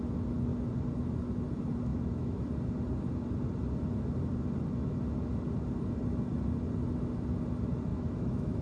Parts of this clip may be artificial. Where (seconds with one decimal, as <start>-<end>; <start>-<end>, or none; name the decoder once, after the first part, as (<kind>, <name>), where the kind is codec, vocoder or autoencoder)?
1.9-2.4 (autoencoder, DAC-VAE); 7.9-8.6

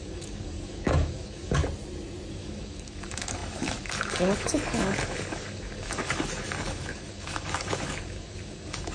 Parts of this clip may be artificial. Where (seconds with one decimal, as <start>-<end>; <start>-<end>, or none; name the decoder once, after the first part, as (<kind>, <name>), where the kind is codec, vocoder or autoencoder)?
0.0-1.6 (codec, DAC); 2.3-8.9

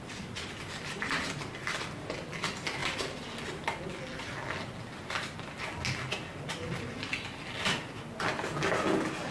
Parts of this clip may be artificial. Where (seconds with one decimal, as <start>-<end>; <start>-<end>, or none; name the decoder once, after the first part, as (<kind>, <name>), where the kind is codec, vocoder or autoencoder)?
none

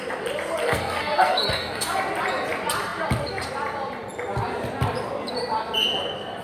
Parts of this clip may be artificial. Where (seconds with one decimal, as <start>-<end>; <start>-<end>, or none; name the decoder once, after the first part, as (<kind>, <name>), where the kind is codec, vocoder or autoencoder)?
0.6-2.0 (codec, SNAC)

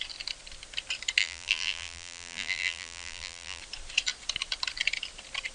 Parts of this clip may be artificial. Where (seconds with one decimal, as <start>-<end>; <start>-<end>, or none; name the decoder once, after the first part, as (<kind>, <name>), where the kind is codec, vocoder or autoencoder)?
1.2-3.6 (vocoder, BigVGAN v2)